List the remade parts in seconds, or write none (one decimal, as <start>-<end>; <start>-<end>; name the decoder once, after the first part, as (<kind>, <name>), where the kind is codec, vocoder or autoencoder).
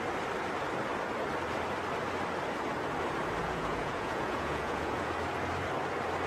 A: 3.4-5.1 (vocoder, Vocos)